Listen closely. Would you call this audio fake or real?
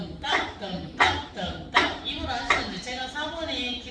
fake